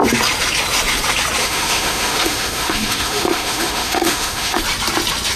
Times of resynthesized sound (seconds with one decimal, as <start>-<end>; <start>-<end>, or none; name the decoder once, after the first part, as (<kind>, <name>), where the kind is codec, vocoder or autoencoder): 1.4-4.6 (autoencoder, DAC-VAE)